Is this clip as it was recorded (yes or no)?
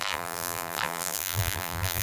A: no